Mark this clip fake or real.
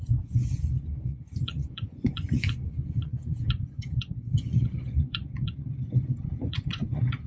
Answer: fake